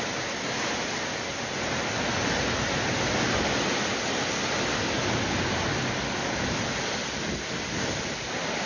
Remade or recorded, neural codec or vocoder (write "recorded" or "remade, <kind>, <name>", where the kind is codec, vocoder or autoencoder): recorded